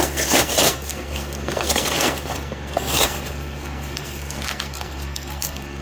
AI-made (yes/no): yes